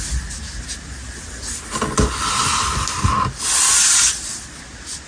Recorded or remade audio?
recorded